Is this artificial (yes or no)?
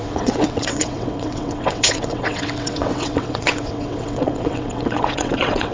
yes